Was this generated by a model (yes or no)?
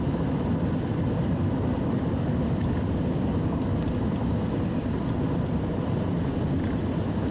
no